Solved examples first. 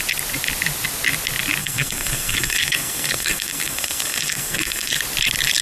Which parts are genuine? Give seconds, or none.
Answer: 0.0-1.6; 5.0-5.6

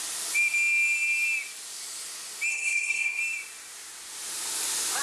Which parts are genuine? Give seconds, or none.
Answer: 0.0-2.5; 3.2-5.0

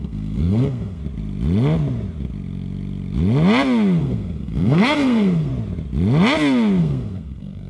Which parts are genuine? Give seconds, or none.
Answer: 1.0-4.0; 5.5-6.8